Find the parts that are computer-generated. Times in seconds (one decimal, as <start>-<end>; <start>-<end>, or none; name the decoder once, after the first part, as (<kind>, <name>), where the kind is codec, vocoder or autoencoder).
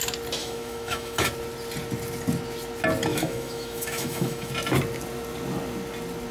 0.4-1.3 (autoencoder, DAC-VAE); 3.1-4.5